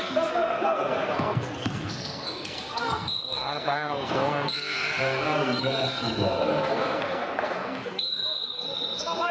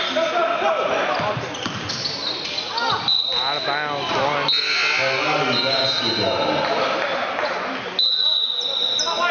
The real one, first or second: second